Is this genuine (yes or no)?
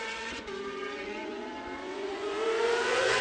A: no